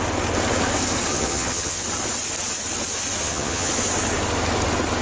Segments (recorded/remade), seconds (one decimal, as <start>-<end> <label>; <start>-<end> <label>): 0.0-1.1 recorded; 1.1-1.8 remade; 1.8-3.2 recorded; 3.2-3.7 remade; 3.7-5.0 recorded